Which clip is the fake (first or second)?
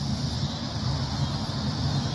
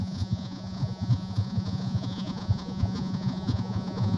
second